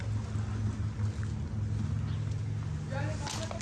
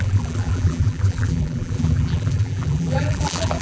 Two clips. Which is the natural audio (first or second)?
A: first